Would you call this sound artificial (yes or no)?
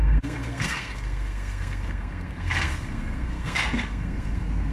yes